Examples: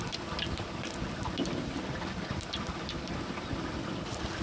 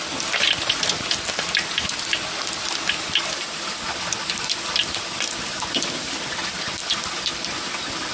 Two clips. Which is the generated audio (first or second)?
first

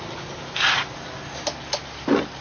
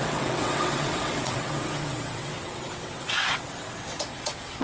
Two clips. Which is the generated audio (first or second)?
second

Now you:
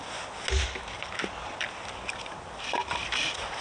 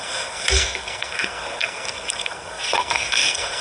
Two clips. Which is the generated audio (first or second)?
second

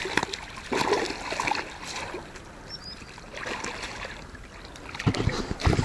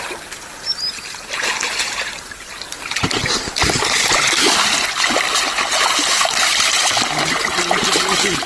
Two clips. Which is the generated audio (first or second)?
first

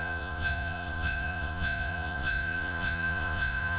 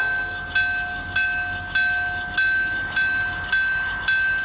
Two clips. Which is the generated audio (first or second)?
first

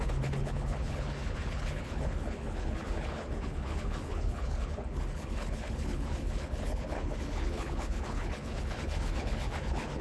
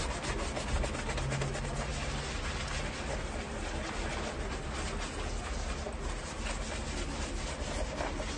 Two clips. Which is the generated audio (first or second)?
first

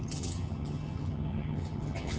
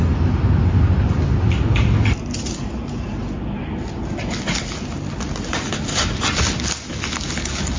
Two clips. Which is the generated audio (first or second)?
first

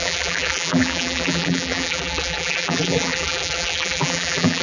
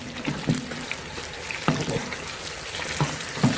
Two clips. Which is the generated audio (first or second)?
first